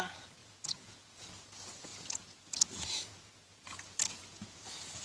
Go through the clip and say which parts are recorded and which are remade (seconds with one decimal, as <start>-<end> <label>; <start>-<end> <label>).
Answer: 0.0-5.0 remade